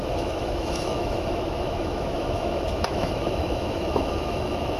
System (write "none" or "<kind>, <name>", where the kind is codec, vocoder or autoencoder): autoencoder, DAC-VAE